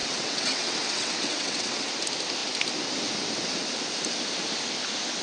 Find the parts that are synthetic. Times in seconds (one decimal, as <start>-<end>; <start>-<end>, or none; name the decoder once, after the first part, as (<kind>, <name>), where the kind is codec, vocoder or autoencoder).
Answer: 0.0-1.9 (vocoder, WaveNeXt)